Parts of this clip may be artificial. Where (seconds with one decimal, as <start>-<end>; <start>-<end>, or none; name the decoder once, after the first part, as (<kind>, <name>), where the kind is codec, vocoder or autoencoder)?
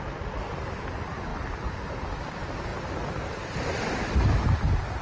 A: none